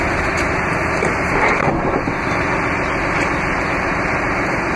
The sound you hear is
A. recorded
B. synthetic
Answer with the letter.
A